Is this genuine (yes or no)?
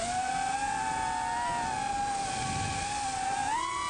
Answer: yes